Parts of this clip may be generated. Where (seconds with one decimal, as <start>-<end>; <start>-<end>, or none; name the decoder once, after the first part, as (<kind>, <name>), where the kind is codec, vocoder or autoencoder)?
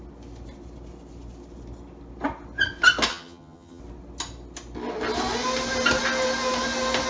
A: 3.1-3.8 (vocoder, HiFi-GAN)